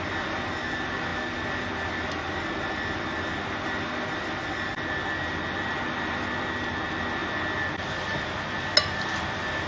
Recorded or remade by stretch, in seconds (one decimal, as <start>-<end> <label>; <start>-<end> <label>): 0.0-9.7 recorded